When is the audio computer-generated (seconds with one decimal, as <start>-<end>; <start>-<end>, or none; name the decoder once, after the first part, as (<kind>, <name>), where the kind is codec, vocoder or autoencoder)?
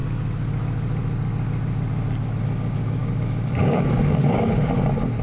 2.4-5.2 (codec, DAC)